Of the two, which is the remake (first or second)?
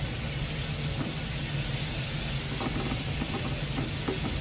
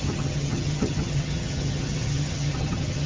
second